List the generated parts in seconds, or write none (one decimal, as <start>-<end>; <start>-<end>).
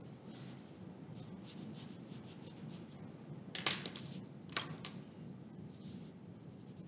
none